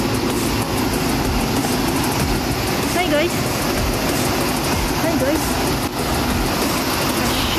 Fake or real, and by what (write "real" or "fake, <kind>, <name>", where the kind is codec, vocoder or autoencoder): real